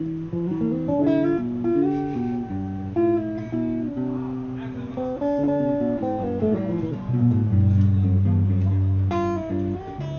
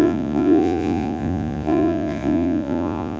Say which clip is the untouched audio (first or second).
first